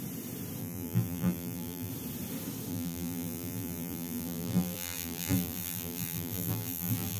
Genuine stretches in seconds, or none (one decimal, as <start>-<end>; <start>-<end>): 0.0-0.6; 1.9-2.7